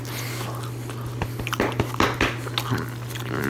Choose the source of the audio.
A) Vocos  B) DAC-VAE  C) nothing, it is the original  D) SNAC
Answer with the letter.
C